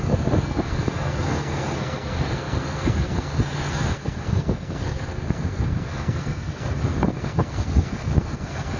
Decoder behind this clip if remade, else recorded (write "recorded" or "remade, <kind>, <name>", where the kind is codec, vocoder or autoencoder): remade, codec, SNAC